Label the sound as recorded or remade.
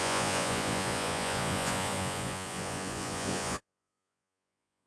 remade